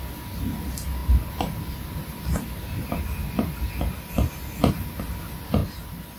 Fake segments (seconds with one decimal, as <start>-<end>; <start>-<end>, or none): none